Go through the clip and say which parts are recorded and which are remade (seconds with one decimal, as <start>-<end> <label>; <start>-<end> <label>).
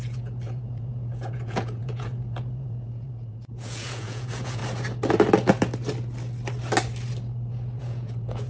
0.0-4.6 remade; 4.6-7.8 recorded; 7.8-8.5 remade